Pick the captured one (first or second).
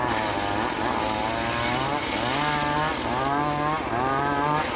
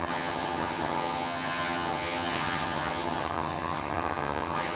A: first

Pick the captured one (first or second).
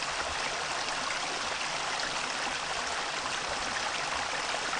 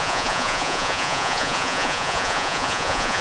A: first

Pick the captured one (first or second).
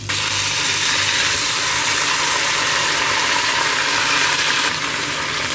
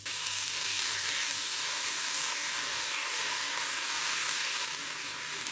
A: first